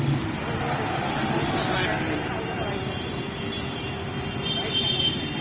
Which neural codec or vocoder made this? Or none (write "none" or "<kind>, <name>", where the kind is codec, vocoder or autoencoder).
none